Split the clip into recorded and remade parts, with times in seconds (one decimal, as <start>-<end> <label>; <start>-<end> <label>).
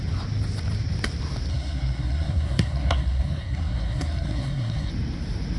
0.0-1.5 recorded; 1.5-4.9 remade; 4.9-5.6 recorded